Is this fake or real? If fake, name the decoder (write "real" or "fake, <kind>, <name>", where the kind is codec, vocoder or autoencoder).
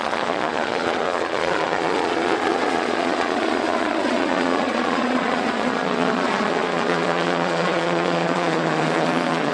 fake, vocoder, Vocos